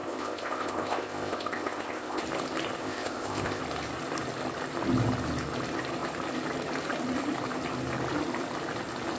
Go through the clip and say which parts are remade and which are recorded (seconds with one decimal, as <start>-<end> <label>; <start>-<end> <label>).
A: 0.0-2.2 remade; 2.2-2.8 recorded; 2.8-3.6 remade; 3.6-9.2 recorded